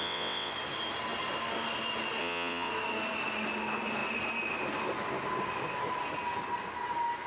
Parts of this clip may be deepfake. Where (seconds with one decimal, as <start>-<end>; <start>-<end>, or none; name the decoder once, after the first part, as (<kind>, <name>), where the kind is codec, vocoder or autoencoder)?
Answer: 0.0-0.5 (vocoder, WaveNeXt); 2.2-2.7